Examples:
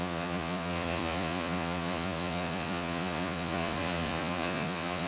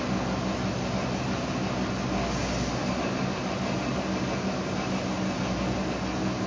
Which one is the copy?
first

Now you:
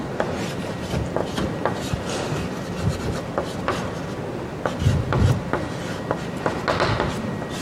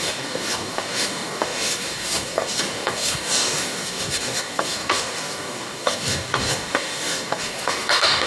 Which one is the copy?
second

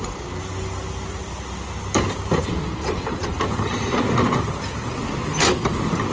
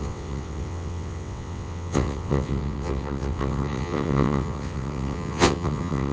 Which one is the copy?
second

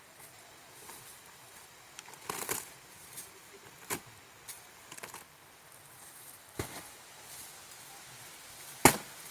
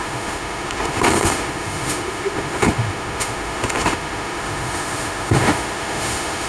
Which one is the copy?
second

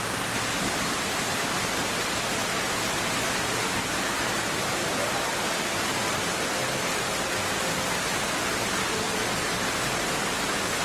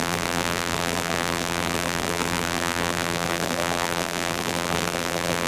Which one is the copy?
second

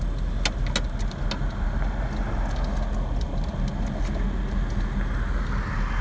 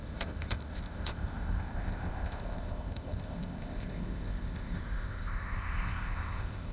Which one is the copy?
second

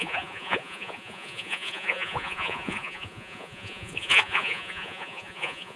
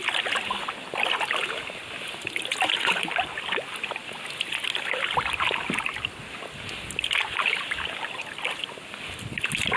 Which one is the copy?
first